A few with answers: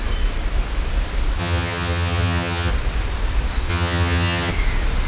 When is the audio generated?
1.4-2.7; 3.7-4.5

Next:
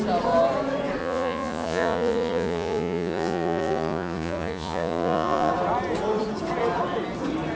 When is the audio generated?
1.0-5.5